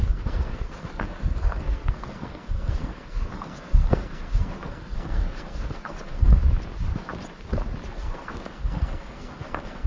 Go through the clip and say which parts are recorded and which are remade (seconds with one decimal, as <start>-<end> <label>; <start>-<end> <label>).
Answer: 0.0-6.4 remade; 6.4-7.9 recorded; 7.9-9.9 remade